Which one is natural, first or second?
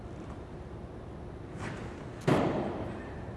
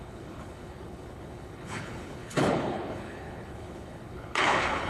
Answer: first